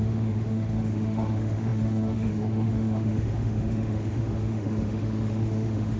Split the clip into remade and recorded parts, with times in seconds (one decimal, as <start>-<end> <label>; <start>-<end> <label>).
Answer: 0.0-6.0 remade